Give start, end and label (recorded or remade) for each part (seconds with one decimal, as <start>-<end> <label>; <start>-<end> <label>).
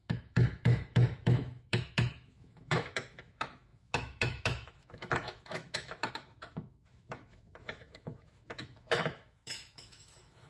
0.0-10.5 remade